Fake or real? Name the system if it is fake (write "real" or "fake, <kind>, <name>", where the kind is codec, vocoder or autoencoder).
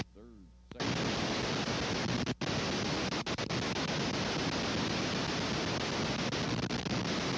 real